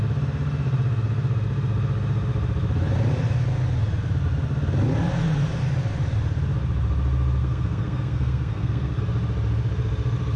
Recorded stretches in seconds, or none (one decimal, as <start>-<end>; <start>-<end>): 0.0-7.4; 9.0-10.4